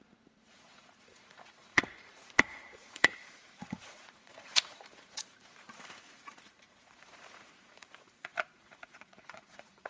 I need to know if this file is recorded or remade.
remade